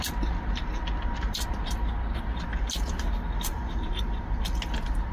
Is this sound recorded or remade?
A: recorded